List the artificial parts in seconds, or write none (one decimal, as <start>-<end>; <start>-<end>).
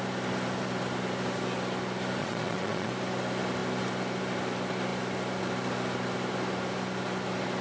2.2-2.9